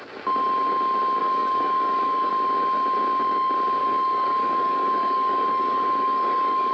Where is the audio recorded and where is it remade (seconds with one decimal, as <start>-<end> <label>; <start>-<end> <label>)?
0.0-1.2 recorded; 1.2-2.3 remade; 2.3-3.8 recorded; 3.8-6.7 remade